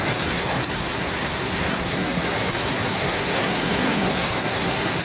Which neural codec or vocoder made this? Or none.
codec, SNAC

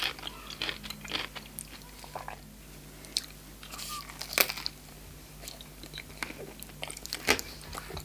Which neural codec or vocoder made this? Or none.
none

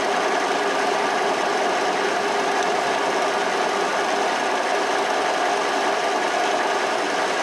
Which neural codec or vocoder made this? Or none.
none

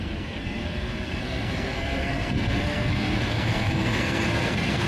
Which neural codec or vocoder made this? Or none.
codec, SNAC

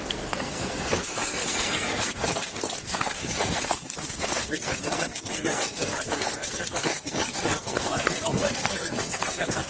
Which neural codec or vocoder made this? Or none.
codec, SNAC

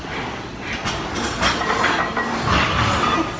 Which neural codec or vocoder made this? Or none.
none